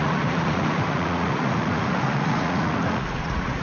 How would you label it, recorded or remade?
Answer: remade